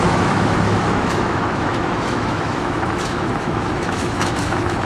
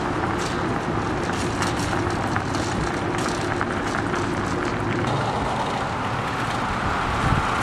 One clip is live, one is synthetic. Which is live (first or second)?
second